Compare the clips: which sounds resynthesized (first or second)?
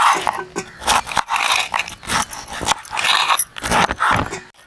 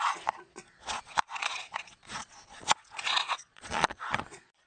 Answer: second